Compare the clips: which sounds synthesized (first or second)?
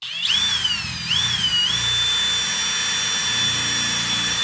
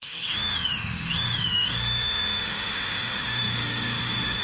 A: second